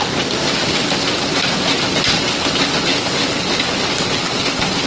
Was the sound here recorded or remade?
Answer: recorded